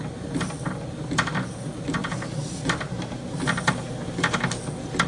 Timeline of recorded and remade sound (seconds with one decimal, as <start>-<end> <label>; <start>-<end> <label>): 0.0-2.0 recorded; 2.0-4.4 remade; 4.4-5.1 recorded